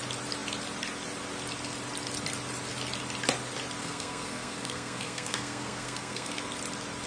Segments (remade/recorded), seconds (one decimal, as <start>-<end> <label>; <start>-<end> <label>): 0.0-3.8 recorded; 3.8-6.4 remade; 6.4-7.1 recorded